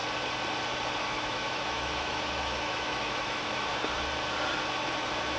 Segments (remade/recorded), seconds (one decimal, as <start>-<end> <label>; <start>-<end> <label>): 0.0-1.0 recorded; 1.0-3.7 remade; 3.7-4.8 recorded; 4.8-5.4 remade